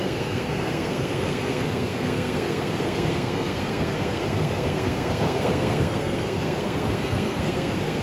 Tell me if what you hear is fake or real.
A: fake